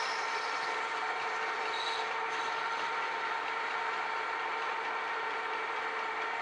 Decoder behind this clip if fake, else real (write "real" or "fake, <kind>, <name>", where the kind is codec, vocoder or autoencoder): fake, vocoder, BigVGAN v2